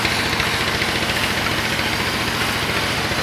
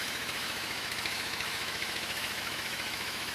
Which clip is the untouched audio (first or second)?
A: first